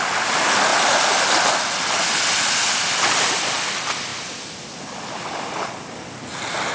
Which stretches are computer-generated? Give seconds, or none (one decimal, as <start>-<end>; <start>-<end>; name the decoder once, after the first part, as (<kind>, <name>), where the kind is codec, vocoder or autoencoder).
none